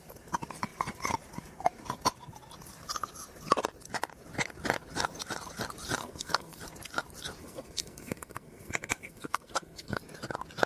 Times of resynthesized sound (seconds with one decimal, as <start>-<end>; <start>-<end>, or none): 6.0-6.6; 7.4-10.0